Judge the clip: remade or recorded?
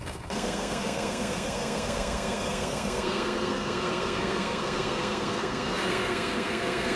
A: remade